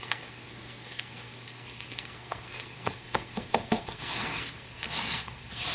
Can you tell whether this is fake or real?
fake